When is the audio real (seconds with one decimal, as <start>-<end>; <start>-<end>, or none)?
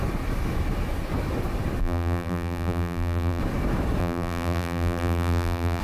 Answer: 0.0-1.8; 3.4-4.0